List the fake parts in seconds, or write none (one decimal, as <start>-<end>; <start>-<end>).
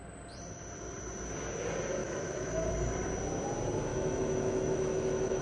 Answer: 2.0-2.7; 3.9-5.4